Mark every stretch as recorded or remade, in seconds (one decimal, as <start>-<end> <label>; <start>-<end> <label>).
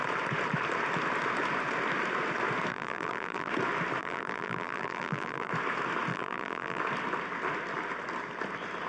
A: 0.0-2.7 recorded; 2.7-3.5 remade; 3.5-4.0 recorded; 4.0-5.5 remade; 5.5-6.1 recorded; 6.1-6.8 remade; 6.8-8.9 recorded